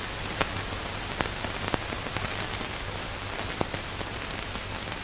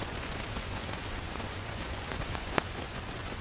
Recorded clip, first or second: first